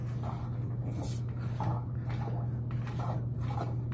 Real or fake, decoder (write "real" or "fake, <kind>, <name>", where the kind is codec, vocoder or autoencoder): real